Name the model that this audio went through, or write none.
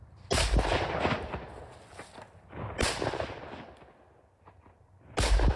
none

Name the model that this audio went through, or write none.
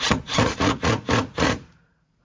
vocoder, Vocos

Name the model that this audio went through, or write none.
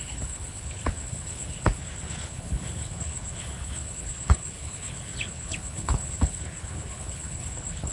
codec, HILCodec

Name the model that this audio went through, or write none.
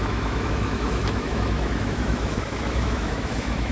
autoencoder, DAC-VAE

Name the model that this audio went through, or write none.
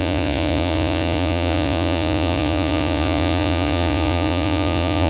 vocoder, Vocos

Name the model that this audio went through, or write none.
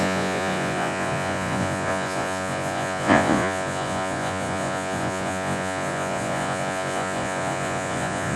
vocoder, Vocos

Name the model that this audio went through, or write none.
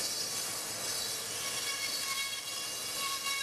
none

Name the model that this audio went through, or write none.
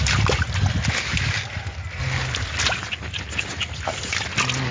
none